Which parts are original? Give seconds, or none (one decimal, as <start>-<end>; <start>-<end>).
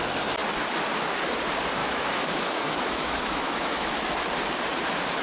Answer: 0.0-1.8; 4.2-5.2